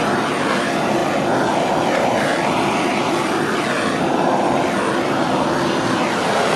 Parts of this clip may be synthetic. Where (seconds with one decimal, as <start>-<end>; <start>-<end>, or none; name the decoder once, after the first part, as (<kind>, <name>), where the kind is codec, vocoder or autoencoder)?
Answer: none